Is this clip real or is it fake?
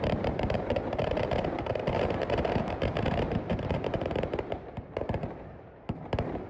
fake